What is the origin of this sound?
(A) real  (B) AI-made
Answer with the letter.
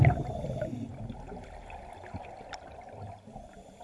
A